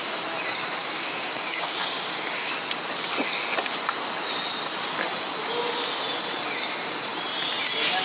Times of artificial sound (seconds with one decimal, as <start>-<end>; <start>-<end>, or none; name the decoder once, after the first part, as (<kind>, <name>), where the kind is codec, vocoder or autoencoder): 0.8-2.5 (codec, DAC)